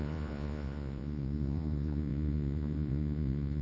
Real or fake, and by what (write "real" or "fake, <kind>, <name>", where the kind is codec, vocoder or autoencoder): fake, vocoder, Vocos